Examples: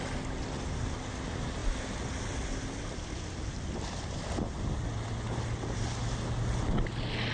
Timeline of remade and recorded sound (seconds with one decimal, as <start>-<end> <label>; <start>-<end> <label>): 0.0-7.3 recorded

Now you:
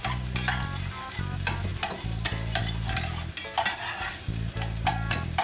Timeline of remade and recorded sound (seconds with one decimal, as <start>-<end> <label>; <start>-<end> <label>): 0.0-5.4 recorded

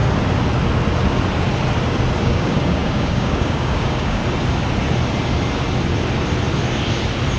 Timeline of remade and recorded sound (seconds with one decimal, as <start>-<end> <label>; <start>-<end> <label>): 0.0-2.2 recorded; 2.2-4.2 remade; 4.2-7.4 recorded

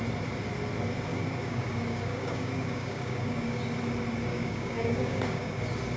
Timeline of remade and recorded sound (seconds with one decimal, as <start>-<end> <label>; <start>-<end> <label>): 0.0-1.1 recorded; 1.1-3.6 remade; 3.6-4.3 recorded; 4.3-5.6 remade; 5.6-6.0 recorded